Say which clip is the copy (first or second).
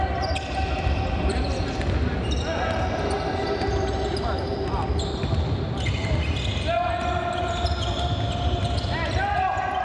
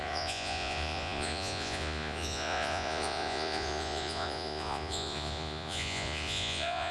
second